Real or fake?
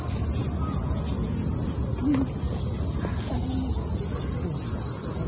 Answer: real